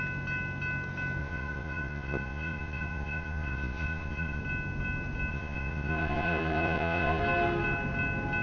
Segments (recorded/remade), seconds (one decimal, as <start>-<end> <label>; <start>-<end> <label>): 0.0-1.2 recorded; 1.2-4.4 remade; 4.4-5.3 recorded; 5.3-7.2 remade; 7.2-8.4 recorded